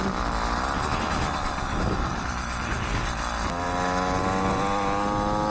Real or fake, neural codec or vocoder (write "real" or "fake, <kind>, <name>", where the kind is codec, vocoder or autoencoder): real